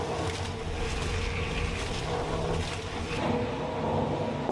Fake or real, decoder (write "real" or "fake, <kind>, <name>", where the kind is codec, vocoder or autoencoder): real